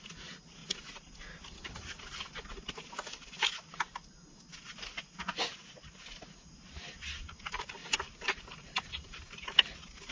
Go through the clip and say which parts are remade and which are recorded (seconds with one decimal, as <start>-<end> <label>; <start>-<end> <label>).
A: 0.0-5.5 recorded; 5.5-6.7 remade; 6.7-7.8 recorded; 7.8-8.4 remade; 8.4-10.1 recorded